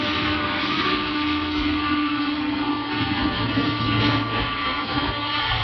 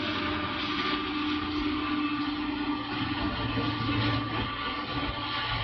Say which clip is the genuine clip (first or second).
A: second